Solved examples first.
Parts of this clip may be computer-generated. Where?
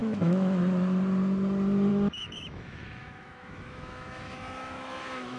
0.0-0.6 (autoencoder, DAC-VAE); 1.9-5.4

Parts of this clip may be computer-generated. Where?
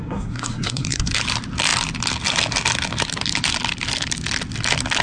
0.0-1.1 (codec, SNAC)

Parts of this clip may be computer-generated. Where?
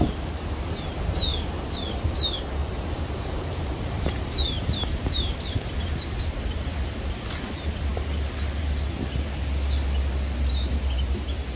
2.6-6.0 (vocoder, BigVGAN v2)